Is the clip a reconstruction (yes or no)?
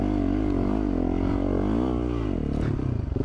no